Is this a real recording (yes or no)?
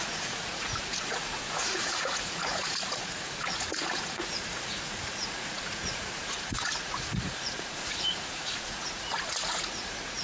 no